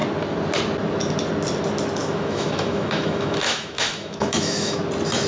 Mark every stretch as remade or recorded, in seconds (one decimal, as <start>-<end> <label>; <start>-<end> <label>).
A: 0.0-2.0 recorded; 2.0-4.8 remade; 4.8-5.3 recorded

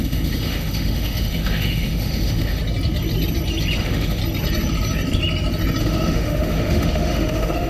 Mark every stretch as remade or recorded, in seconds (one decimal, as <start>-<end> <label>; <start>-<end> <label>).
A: 0.0-2.6 remade; 2.6-3.8 recorded; 3.8-4.2 remade; 4.2-5.8 recorded; 5.8-7.7 remade

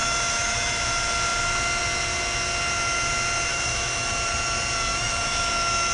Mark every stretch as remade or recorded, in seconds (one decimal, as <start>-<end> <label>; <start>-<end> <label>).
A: 0.0-0.7 remade; 0.7-3.5 recorded; 3.5-4.3 remade; 4.3-4.9 recorded; 4.9-5.5 remade; 5.5-5.9 recorded